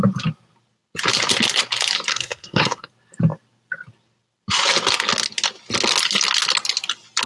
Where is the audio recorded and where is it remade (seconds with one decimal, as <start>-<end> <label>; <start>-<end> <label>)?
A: 0.0-2.1 recorded; 2.1-2.9 remade; 2.9-7.3 recorded